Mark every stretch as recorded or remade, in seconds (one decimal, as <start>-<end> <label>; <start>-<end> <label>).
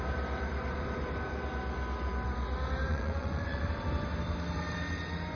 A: 0.0-2.9 recorded; 2.9-3.6 remade; 3.6-5.3 recorded